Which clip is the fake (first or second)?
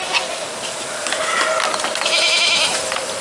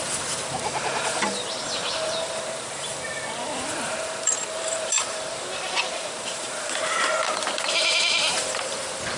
second